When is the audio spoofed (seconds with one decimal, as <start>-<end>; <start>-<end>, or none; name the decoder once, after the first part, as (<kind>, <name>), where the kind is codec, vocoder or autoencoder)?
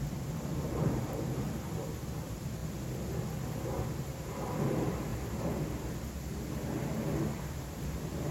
0.0-2.6 (vocoder, BigVGAN v2); 4.0-5.1; 7.3-8.3